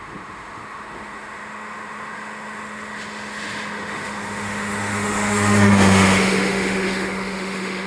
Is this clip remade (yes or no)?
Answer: yes